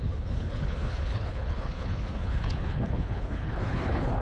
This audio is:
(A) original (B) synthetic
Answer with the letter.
B